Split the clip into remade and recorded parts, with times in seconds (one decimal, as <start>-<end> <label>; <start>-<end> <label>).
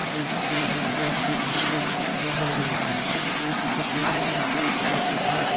0.0-5.6 remade